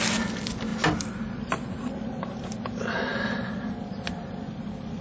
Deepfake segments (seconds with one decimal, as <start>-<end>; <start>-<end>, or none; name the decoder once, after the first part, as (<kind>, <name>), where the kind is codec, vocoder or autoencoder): none